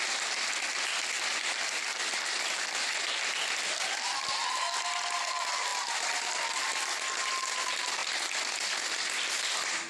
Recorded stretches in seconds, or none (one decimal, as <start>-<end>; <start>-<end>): 0.0-9.9